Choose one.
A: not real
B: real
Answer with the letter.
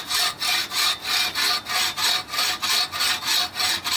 B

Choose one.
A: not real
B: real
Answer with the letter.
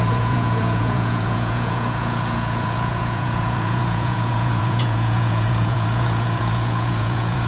A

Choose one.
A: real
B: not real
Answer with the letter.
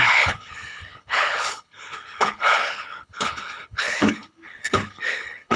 B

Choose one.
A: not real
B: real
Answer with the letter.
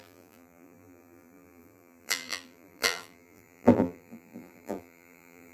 A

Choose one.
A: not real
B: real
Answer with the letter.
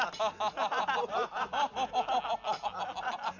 B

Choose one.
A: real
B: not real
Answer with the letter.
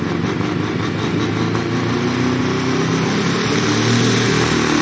A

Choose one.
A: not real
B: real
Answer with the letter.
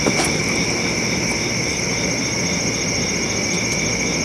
B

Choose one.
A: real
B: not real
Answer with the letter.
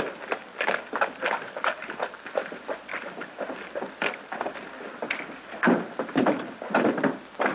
A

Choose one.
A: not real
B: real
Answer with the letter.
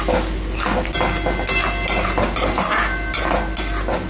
B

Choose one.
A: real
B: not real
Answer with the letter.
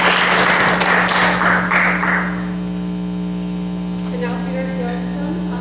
A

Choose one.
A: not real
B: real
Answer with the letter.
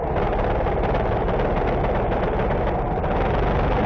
B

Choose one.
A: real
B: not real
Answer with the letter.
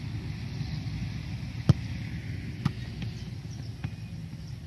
A